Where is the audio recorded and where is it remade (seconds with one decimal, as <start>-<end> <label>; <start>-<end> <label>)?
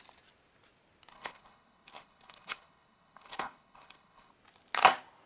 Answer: 0.0-1.1 recorded; 1.1-4.3 remade; 4.3-5.3 recorded